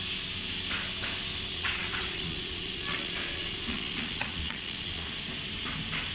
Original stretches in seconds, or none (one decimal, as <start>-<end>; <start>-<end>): 0.0-1.5; 5.2-6.1